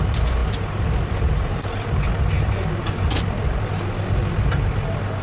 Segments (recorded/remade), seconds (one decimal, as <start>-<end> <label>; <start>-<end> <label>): 0.0-5.2 recorded